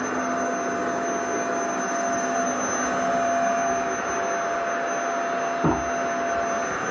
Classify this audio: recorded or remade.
recorded